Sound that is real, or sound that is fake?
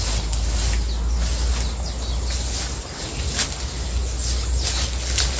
real